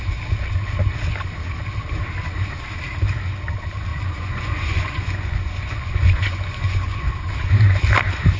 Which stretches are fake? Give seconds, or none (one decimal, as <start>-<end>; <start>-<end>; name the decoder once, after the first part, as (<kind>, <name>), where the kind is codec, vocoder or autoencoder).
3.9-7.1 (vocoder, Vocos)